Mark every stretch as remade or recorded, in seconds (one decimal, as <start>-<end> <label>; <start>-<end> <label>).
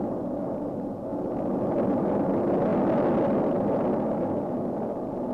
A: 0.0-5.3 recorded